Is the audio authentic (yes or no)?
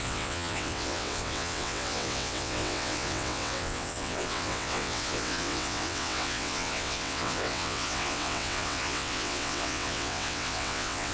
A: no